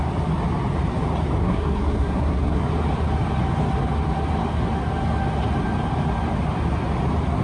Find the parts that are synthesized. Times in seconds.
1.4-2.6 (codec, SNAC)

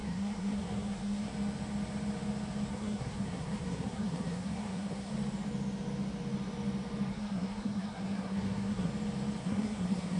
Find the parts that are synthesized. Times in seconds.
0.0-1.3 (codec, SNAC); 2.7-5.1; 7.1-8.9; 9.4-10.2

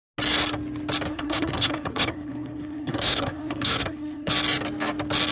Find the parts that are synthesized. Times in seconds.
1.1-4.3 (codec, SNAC)

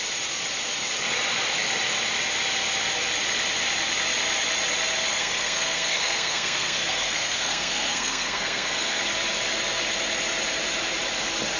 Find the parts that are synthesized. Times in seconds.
5.1-9.0 (codec, SNAC)

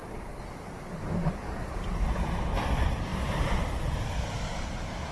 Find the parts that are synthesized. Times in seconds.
none